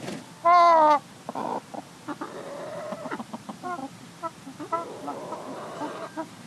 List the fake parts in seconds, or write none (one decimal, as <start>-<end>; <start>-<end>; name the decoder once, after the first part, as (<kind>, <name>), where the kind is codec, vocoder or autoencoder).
3.8-6.5 (vocoder, BigVGAN v2)